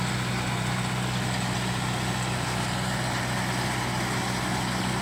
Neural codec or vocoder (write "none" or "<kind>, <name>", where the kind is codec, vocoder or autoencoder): none